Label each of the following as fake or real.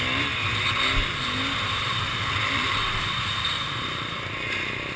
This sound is real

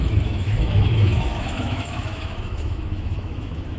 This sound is fake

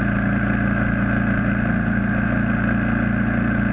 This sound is real